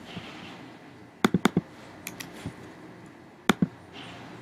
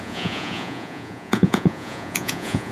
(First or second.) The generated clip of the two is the second